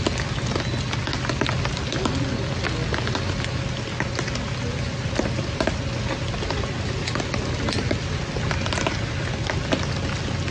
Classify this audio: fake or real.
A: real